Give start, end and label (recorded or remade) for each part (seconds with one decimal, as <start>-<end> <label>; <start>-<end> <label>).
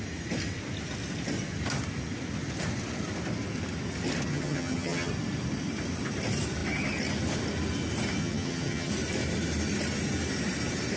0.0-4.3 recorded; 4.3-5.1 remade; 5.1-8.2 recorded; 8.2-8.9 remade; 8.9-11.0 recorded